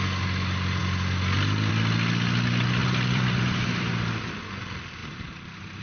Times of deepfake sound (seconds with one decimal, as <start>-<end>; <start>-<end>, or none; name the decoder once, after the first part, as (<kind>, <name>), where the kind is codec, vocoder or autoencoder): 2.8-3.9 (vocoder, BigVGAN v2); 5.0-5.8